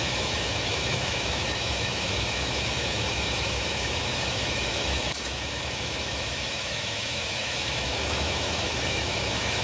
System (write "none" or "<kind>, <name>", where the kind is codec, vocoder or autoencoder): autoencoder, DAC-VAE